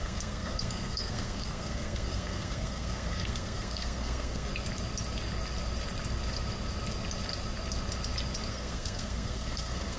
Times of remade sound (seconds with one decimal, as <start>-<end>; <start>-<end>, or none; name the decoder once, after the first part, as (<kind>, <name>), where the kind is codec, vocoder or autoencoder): 0.0-4.5 (codec, SNAC); 8.5-10.0